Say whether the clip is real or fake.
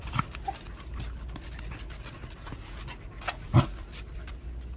real